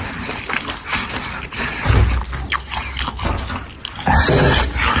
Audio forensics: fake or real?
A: real